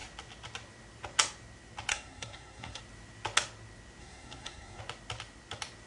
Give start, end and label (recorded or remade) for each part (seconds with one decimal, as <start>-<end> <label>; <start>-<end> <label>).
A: 0.0-1.9 recorded; 1.9-2.8 remade; 2.8-4.0 recorded; 4.0-4.8 remade; 4.8-5.9 recorded